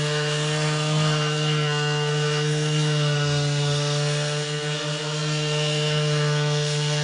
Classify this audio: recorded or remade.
remade